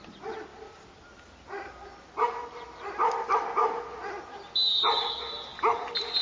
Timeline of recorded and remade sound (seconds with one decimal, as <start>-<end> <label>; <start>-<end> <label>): 0.0-6.2 recorded

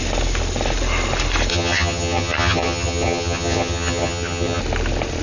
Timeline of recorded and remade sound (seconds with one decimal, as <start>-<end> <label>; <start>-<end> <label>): 0.0-1.5 recorded; 1.5-4.6 remade; 4.6-5.2 recorded

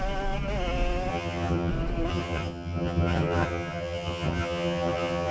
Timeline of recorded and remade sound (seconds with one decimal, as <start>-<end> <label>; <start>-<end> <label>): 0.0-1.1 recorded; 1.1-1.7 remade; 1.7-2.1 recorded; 2.1-5.3 remade

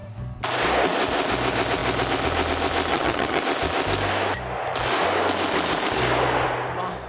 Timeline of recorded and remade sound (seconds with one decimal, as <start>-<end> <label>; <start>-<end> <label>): 0.0-2.9 recorded; 2.9-3.4 remade; 3.4-7.1 recorded